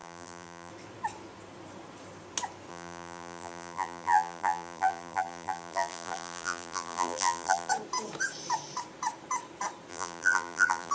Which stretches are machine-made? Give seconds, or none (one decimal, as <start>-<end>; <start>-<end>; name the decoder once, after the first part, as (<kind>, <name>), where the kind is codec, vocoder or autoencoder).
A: 0.0-0.7 (vocoder, BigVGAN v2); 2.7-7.7; 9.9-10.9